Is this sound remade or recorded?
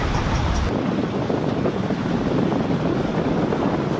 recorded